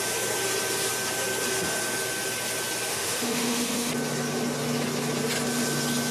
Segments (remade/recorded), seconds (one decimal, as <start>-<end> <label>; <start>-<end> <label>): 0.0-2.9 recorded; 2.9-3.9 remade; 3.9-6.1 recorded